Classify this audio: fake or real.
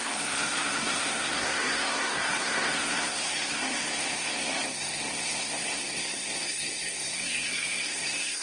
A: fake